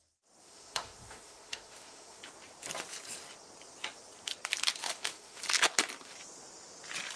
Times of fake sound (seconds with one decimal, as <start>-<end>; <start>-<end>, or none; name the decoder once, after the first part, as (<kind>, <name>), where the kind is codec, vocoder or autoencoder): 0.4-2.2 (autoencoder, DAC-VAE); 4.8-5.4